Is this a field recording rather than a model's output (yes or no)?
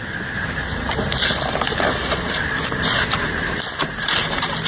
no